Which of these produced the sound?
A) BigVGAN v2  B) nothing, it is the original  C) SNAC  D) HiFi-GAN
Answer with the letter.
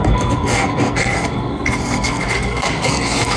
C